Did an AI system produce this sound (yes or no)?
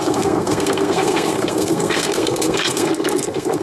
yes